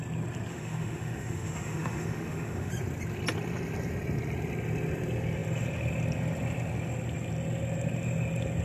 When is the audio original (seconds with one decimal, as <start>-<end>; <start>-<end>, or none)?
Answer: 0.0-0.5; 2.7-8.6